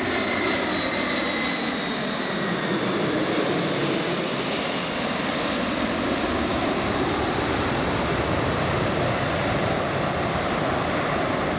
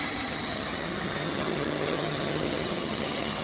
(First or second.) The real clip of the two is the first